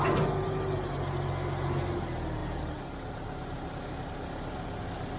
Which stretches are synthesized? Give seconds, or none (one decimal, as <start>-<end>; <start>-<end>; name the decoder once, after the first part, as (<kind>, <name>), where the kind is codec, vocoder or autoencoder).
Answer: none